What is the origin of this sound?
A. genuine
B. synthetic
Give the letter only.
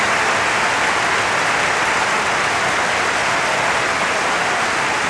A